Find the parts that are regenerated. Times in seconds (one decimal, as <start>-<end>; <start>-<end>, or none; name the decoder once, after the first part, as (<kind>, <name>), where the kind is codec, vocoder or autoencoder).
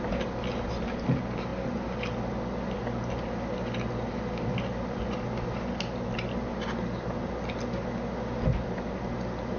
none